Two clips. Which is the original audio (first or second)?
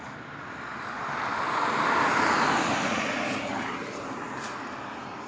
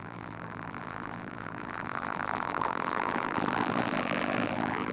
first